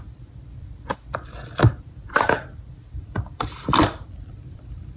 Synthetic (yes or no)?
yes